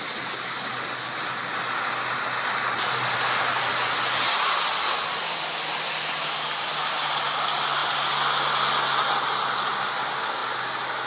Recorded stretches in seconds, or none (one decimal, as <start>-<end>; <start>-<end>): 0.0-11.1